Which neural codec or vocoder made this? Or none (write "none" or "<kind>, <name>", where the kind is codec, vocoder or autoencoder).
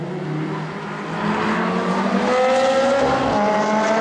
none